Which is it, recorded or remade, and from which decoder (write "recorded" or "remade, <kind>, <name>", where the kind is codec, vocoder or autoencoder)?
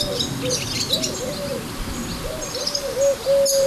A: recorded